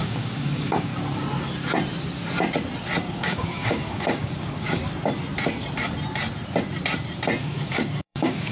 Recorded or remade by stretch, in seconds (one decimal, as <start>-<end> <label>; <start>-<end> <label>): 0.0-0.9 remade; 0.9-3.1 recorded; 3.1-4.8 remade; 4.8-7.4 recorded; 7.4-8.5 remade